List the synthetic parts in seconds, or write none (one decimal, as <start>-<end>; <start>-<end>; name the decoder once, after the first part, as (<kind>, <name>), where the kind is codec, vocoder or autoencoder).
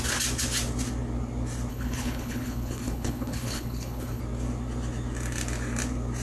1.7-4.2 (codec, HILCodec)